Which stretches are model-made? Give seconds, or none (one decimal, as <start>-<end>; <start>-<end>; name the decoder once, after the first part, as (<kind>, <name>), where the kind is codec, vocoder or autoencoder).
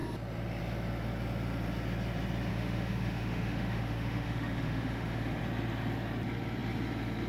2.5-5.4 (autoencoder, DAC-VAE)